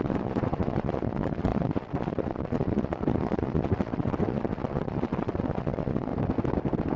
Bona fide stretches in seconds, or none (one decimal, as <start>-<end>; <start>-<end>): 6.1-7.0